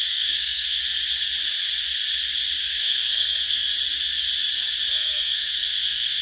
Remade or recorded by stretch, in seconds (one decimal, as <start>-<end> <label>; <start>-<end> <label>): 0.0-0.8 remade; 0.8-2.6 recorded; 2.6-3.7 remade; 3.7-4.9 recorded; 4.9-6.2 remade